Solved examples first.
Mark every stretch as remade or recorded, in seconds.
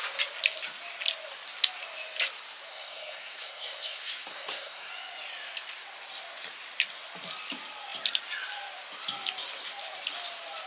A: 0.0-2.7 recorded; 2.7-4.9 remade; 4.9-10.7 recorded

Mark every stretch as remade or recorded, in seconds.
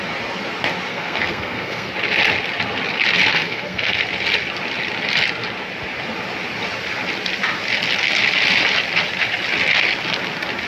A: 0.0-0.9 recorded; 0.9-1.9 remade; 1.9-3.3 recorded; 3.3-4.0 remade; 4.0-10.7 recorded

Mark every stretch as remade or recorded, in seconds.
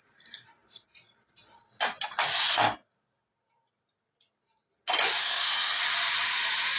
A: 0.0-5.2 recorded; 5.2-5.8 remade; 5.8-6.8 recorded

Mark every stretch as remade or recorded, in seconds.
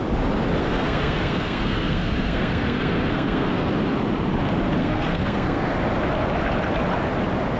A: 0.0-0.6 recorded; 0.6-3.7 remade; 3.7-4.8 recorded; 4.8-5.7 remade; 5.7-7.6 recorded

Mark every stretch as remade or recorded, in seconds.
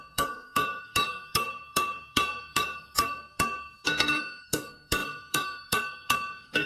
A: 0.0-6.7 remade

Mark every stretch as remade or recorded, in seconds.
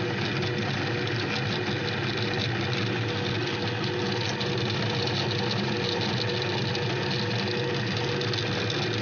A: 0.0-9.0 recorded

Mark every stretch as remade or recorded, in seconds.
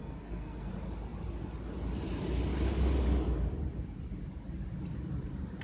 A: 0.0-0.7 remade; 0.7-5.6 recorded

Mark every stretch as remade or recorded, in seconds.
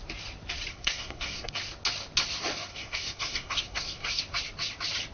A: 0.0-0.7 recorded; 0.7-1.5 remade; 1.5-2.7 recorded; 2.7-4.2 remade; 4.2-5.1 recorded